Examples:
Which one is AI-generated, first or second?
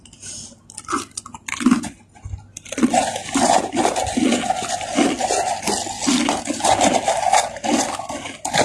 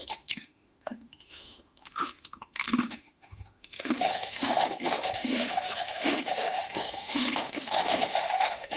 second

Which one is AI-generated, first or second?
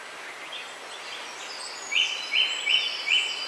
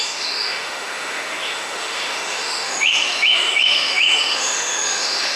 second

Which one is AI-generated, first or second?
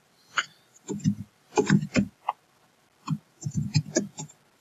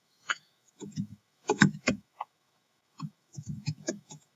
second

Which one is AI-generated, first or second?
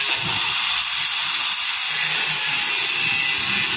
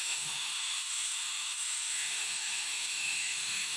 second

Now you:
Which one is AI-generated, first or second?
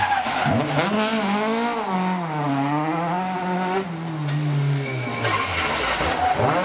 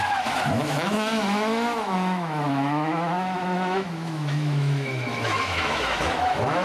second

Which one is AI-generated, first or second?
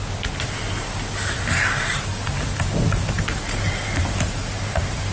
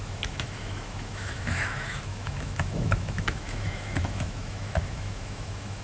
second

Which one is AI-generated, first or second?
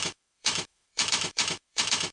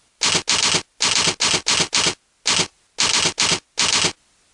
first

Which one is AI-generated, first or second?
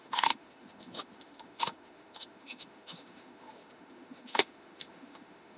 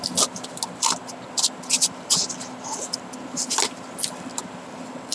first